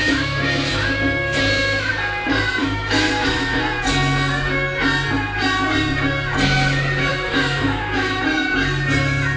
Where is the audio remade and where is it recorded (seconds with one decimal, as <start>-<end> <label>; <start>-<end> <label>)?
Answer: 0.0-1.9 remade; 1.9-2.6 recorded; 2.6-3.6 remade; 3.6-7.1 recorded; 7.1-8.2 remade; 8.2-9.4 recorded